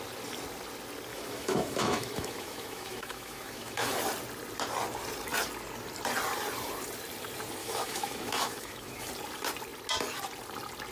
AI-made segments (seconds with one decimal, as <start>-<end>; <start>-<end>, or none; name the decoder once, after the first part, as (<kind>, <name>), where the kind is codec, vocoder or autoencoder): 1.1-4.0 (autoencoder, DAC-VAE); 7.6-9.1